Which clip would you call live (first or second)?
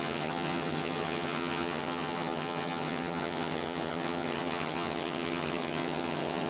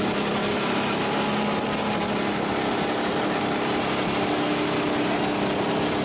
second